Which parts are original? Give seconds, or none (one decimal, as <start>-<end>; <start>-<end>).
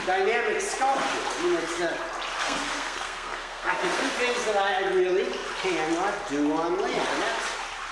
0.0-2.4; 4.1-7.9